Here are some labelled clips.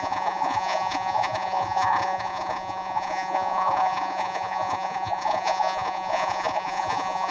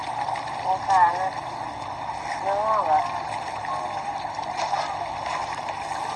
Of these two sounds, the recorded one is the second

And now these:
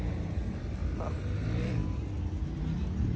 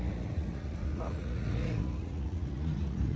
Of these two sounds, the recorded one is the first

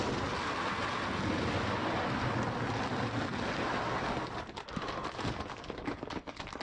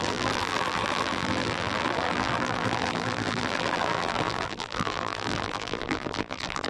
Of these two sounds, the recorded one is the first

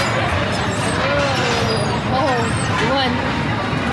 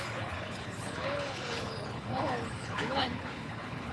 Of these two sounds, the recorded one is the first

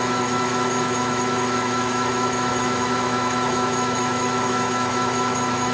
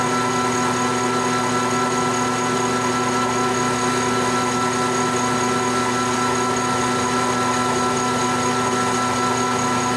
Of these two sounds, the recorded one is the second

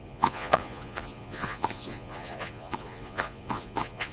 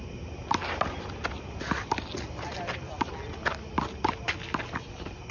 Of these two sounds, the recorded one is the second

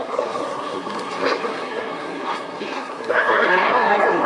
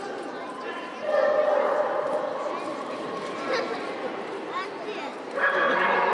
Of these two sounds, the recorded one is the second